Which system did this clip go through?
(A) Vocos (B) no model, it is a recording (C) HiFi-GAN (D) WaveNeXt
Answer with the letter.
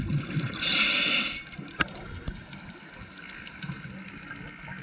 B